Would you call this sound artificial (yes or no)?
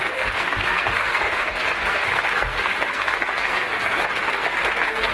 yes